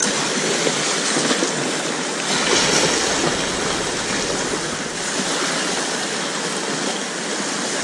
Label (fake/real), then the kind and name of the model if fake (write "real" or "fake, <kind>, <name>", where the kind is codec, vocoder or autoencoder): real